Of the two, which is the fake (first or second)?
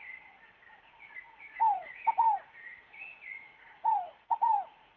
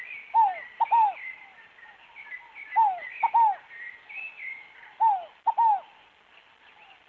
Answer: first